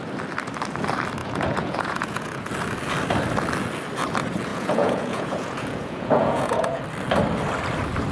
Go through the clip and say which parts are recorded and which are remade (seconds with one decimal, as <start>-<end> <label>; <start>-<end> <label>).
0.0-1.2 recorded; 1.2-2.5 remade; 2.5-4.5 recorded; 4.5-6.8 remade; 6.8-8.1 recorded